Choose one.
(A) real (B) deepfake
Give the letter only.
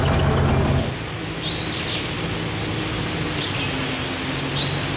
A